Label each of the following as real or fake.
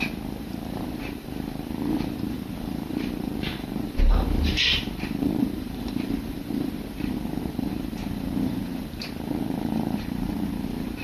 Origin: fake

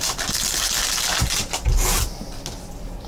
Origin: real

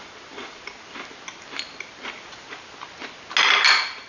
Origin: real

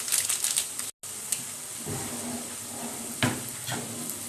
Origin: real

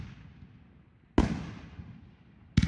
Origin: real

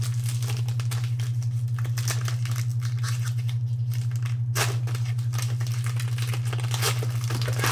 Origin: real